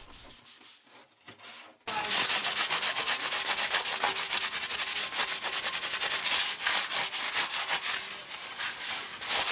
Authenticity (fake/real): real